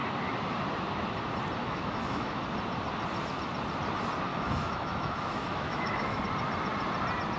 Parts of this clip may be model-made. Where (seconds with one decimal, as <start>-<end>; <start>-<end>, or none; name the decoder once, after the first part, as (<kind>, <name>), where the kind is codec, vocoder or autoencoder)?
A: 1.6-2.4 (autoencoder, DAC-VAE); 4.3-6.2